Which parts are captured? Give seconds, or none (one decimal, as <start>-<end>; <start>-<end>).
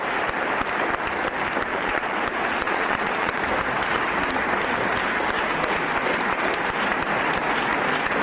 0.0-1.7; 2.2-2.6; 3.4-8.2